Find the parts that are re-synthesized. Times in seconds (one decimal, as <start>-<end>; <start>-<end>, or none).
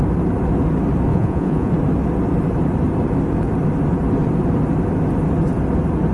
1.1-1.7